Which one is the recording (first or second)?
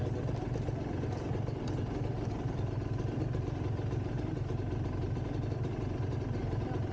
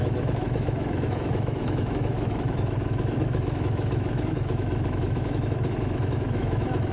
first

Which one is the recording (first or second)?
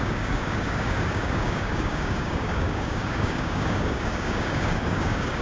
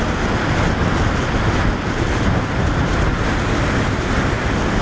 second